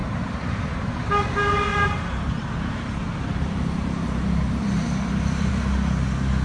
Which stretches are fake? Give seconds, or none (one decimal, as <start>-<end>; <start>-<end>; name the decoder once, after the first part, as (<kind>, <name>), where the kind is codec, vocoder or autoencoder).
0.0-0.9 (vocoder, BigVGAN v2); 1.7-5.5